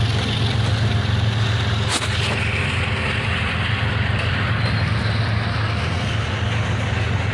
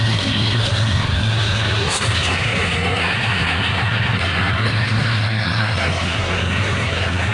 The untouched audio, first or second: first